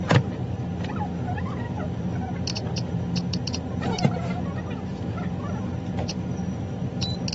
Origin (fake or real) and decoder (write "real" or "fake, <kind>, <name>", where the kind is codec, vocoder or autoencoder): fake, vocoder, BigVGAN v2